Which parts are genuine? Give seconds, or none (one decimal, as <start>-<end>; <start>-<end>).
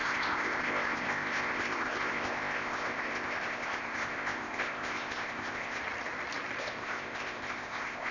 5.8-6.6